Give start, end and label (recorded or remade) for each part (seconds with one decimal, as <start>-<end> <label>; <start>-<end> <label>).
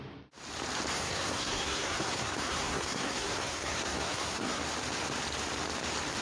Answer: 0.0-0.9 recorded; 0.9-4.6 remade; 4.6-6.2 recorded